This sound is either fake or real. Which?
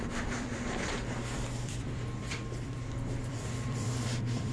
fake